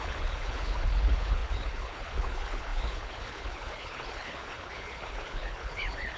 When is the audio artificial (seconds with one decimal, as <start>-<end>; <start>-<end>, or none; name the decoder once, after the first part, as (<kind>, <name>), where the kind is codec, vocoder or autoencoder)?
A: 0.0-6.2 (codec, HILCodec)